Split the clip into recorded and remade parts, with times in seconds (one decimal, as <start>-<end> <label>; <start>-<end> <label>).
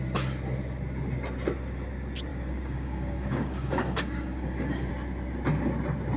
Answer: 0.0-2.3 recorded; 2.3-4.9 remade; 4.9-6.2 recorded